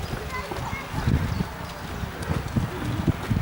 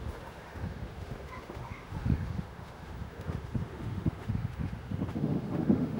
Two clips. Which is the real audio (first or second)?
first